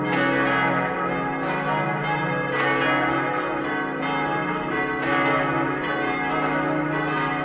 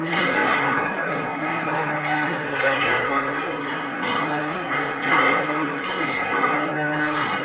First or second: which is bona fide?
first